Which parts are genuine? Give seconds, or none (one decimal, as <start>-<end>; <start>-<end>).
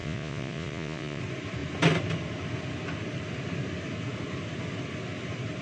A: 1.2-5.6